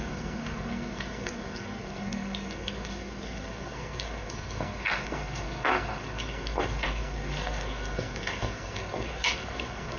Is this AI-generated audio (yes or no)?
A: yes